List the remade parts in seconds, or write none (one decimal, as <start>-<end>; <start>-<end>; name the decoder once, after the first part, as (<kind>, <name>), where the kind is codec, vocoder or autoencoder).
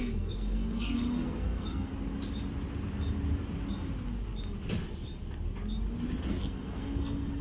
0.0-1.9 (codec, SNAC); 6.2-7.4